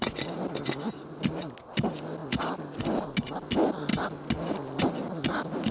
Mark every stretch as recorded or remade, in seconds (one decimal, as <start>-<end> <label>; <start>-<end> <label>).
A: 0.0-5.7 recorded